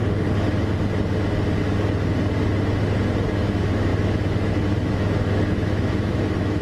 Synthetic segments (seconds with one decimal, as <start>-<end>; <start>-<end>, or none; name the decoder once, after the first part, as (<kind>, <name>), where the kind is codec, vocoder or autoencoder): 3.3-6.6 (autoencoder, DAC-VAE)